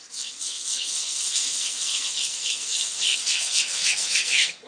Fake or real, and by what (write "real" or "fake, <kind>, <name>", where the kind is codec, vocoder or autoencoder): fake, codec, SNAC